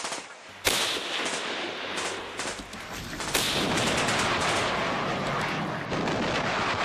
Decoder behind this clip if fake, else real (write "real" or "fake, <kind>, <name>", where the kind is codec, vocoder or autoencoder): real